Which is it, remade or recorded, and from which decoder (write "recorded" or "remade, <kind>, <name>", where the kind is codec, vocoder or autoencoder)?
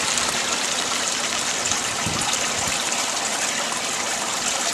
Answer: recorded